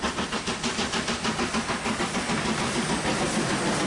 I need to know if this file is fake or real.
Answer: real